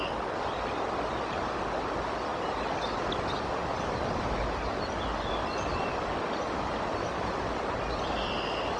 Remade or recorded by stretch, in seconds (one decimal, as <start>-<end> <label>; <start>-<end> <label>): 0.0-8.8 recorded